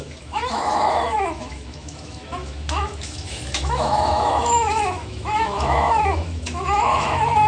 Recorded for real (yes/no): no